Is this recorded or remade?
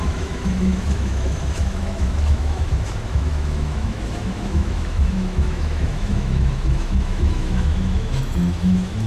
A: remade